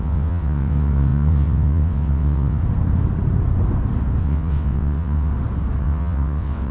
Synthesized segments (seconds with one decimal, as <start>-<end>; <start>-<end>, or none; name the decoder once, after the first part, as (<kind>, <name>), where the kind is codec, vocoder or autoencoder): 0.0-2.6 (vocoder, WaveNeXt); 4.2-5.3; 5.8-6.7